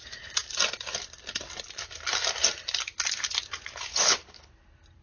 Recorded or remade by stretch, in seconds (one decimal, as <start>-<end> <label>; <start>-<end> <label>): 0.0-3.9 recorded; 3.9-4.5 remade; 4.5-5.0 recorded